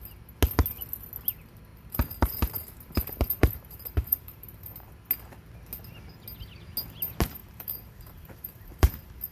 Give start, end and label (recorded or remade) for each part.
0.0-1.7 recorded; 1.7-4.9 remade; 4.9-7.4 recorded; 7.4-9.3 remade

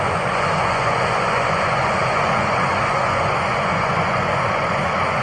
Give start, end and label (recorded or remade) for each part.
0.0-5.2 remade

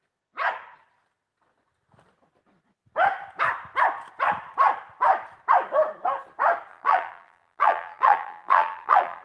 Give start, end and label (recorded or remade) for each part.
0.0-6.7 recorded; 6.7-9.2 remade

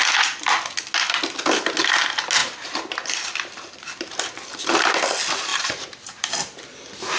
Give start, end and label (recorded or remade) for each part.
0.0-2.4 recorded; 2.4-3.8 remade; 3.8-5.5 recorded; 5.5-6.3 remade; 6.3-7.2 recorded

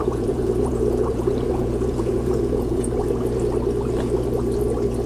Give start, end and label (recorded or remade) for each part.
0.0-3.1 remade; 3.1-5.1 recorded

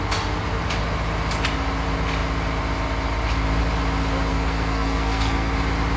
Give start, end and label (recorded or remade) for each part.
0.0-4.3 recorded; 4.3-5.5 remade; 5.5-6.0 recorded

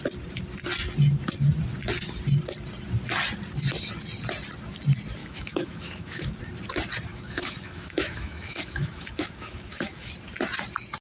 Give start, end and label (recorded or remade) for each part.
0.0-5.2 recorded; 5.2-6.4 remade; 6.4-7.1 recorded; 7.1-10.1 remade; 10.1-11.0 recorded